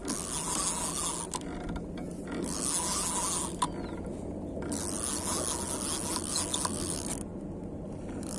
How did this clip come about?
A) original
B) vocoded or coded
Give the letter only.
A